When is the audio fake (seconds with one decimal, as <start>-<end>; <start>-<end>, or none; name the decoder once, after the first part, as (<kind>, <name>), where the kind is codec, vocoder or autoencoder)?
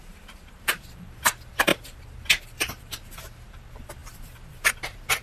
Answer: 0.0-1.7 (vocoder, BigVGAN v2); 2.4-5.2